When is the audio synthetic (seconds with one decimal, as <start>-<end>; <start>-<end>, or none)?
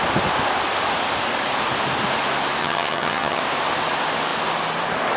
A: 2.6-3.4